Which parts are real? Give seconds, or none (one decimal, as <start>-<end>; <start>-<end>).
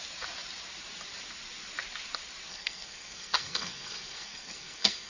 0.0-2.5